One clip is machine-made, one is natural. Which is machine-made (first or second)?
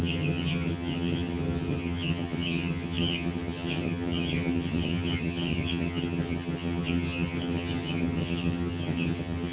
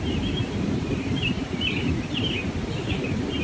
first